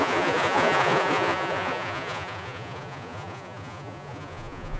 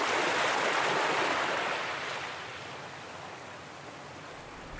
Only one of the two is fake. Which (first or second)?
first